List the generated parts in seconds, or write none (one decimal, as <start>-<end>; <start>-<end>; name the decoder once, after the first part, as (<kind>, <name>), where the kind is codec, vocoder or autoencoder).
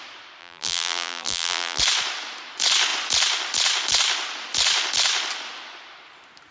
0.4-1.8 (vocoder, BigVGAN v2)